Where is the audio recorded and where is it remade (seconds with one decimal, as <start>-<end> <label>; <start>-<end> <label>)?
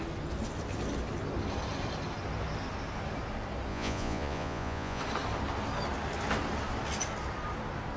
0.0-3.7 recorded; 3.7-5.0 remade; 5.0-8.0 recorded